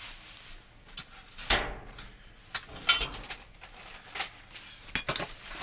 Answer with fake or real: real